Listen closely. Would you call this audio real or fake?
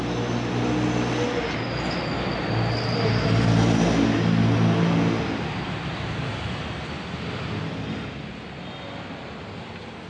real